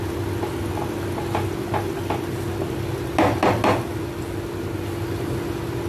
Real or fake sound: real